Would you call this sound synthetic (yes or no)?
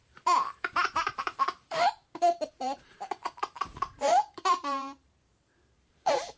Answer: yes